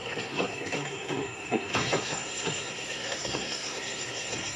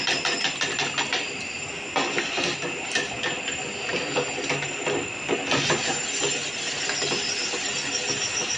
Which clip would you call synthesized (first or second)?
first